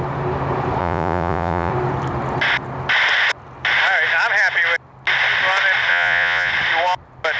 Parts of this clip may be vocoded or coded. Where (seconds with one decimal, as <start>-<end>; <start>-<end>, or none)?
0.8-1.7; 5.9-6.5